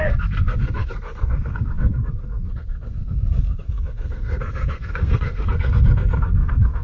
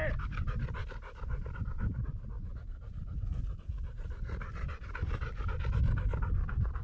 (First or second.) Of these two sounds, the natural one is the second